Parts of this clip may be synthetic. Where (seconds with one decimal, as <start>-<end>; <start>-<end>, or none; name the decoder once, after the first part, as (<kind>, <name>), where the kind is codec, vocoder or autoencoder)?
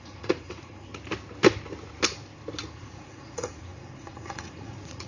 0.0-0.9 (vocoder, Vocos); 2.7-5.1